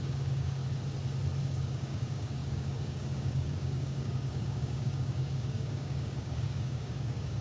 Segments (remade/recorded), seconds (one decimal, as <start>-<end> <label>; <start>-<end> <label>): 0.0-0.6 remade; 0.6-1.4 recorded; 1.4-7.4 remade